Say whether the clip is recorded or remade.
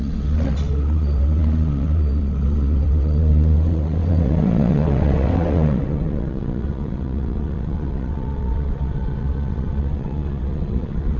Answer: remade